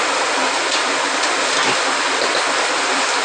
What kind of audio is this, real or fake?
real